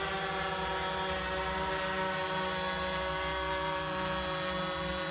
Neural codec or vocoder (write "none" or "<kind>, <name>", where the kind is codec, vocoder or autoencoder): none